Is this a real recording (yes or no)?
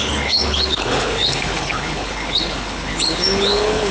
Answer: no